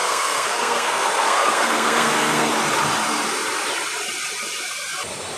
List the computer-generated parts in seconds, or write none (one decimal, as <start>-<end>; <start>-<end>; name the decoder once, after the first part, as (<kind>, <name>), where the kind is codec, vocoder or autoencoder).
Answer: 0.0-2.5 (codec, SNAC)